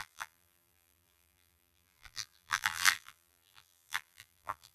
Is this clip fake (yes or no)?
yes